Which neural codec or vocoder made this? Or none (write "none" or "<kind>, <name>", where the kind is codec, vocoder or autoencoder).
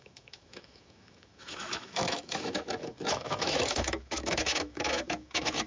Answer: autoencoder, DAC-VAE